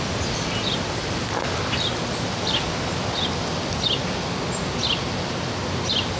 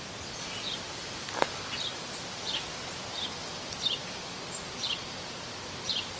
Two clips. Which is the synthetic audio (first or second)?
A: second